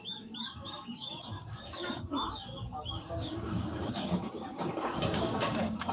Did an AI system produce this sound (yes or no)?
yes